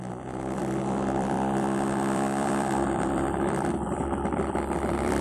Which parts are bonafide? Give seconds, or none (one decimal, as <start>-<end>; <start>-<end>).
none